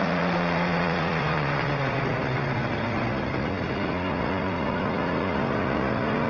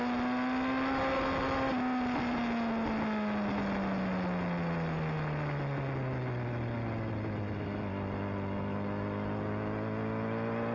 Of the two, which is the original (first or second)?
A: second